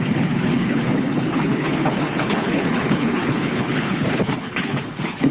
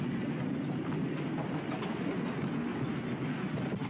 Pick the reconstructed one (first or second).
first